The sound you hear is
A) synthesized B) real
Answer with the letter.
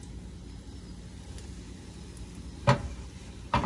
B